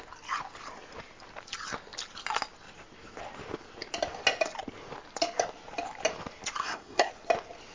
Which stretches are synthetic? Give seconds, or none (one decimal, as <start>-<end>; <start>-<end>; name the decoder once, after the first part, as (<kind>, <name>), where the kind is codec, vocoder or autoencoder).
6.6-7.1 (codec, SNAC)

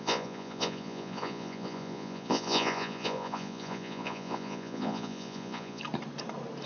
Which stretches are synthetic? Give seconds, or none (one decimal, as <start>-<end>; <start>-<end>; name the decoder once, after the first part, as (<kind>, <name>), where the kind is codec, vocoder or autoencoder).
0.0-5.8 (vocoder, Vocos)

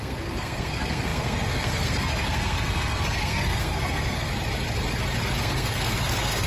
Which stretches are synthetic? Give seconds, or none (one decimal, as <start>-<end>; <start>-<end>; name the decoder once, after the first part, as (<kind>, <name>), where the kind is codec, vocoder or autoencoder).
0.0-4.3 (codec, SNAC); 5.4-6.5

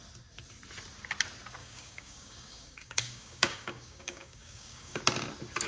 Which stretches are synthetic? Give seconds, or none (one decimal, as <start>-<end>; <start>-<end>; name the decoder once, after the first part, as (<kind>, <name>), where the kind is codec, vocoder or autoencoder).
1.6-5.0 (codec, DAC)

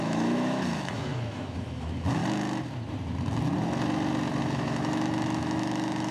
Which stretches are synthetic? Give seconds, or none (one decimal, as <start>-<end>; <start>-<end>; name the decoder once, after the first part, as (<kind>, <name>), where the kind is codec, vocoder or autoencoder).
0.0-2.2 (autoencoder, DAC-VAE); 4.4-6.1

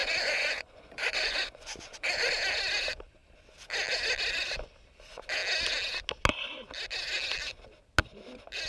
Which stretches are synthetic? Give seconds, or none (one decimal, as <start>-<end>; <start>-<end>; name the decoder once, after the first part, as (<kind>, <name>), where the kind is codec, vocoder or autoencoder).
0.0-2.3 (vocoder, Vocos)